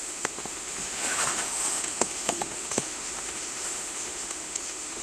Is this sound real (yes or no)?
no